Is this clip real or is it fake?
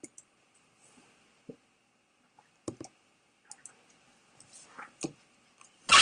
real